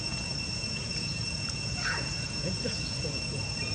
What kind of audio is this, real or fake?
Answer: fake